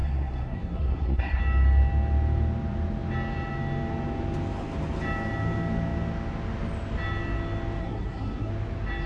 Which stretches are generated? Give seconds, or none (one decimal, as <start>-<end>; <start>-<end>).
0.0-1.4; 7.8-8.5